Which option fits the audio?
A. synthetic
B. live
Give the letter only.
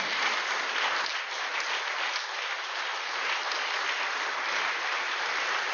B